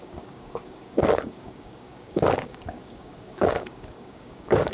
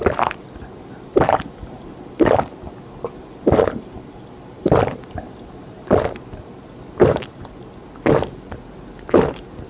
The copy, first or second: first